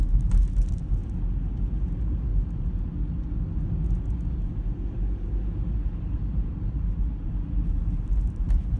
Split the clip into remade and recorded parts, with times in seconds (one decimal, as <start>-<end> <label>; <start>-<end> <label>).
0.0-1.0 remade; 1.0-1.7 recorded; 1.7-2.3 remade; 2.3-5.4 recorded; 5.4-8.8 remade